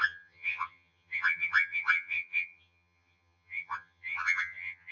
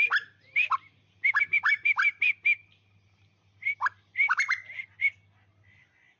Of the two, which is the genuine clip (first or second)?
second